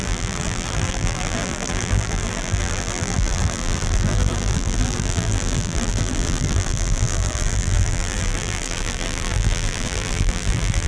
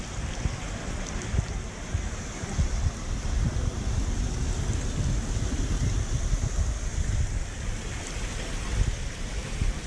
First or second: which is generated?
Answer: first